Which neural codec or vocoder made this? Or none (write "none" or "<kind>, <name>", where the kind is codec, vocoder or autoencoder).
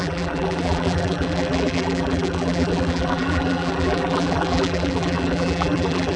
vocoder, BigVGAN v2